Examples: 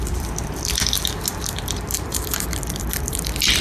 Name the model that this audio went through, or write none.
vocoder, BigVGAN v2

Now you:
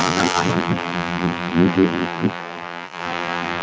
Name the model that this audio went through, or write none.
vocoder, BigVGAN v2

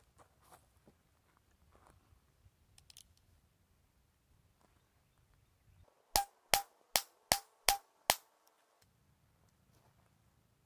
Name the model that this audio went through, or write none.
none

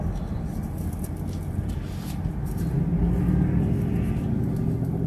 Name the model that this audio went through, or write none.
none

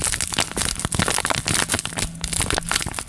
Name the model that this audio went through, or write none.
none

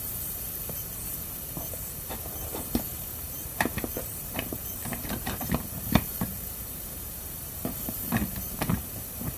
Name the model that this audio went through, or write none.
vocoder, BigVGAN v2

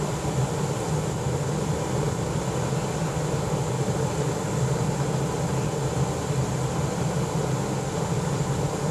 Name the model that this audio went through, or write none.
none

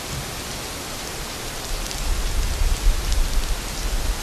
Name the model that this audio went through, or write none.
none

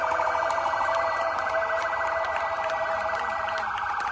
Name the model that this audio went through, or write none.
vocoder, BigVGAN v2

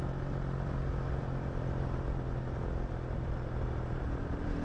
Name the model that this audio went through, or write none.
vocoder, BigVGAN v2